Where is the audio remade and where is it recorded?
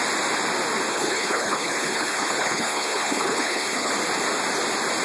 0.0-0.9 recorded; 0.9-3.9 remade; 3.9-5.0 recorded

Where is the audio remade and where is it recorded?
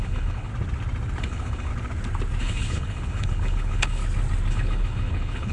0.0-0.5 remade; 0.5-1.2 recorded; 1.2-1.7 remade; 1.7-2.4 recorded; 2.4-4.0 remade; 4.0-4.5 recorded; 4.5-5.5 remade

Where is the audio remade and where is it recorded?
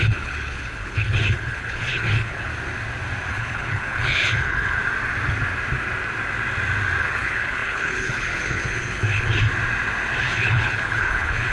0.0-2.5 remade; 2.5-3.3 recorded; 3.3-4.8 remade; 4.8-7.0 recorded; 7.0-9.3 remade; 9.3-10.2 recorded; 10.2-11.5 remade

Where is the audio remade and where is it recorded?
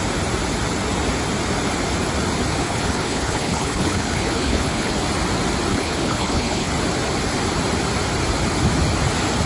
0.0-2.6 recorded; 2.6-4.9 remade; 4.9-5.7 recorded; 5.7-6.7 remade; 6.7-9.5 recorded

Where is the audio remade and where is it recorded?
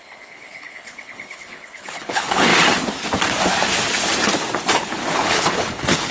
0.0-2.5 remade; 2.5-4.7 recorded; 4.7-6.1 remade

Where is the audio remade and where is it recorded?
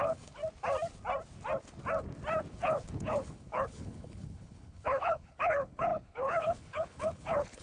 0.0-0.4 remade; 0.4-2.5 recorded; 2.5-7.6 remade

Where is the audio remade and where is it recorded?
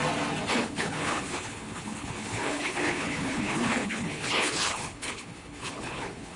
0.0-0.5 recorded; 0.5-6.4 remade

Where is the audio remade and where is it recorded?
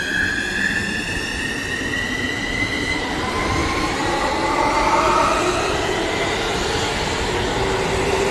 0.0-8.3 recorded